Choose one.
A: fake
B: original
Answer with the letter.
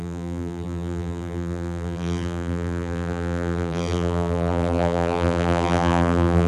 A